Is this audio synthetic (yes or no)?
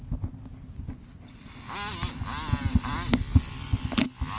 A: no